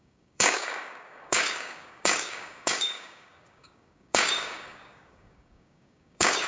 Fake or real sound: fake